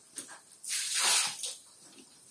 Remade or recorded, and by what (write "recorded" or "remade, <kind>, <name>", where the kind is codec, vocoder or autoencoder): remade, vocoder, BigVGAN v2